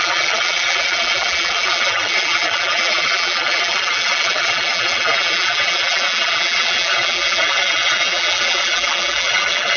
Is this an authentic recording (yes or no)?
no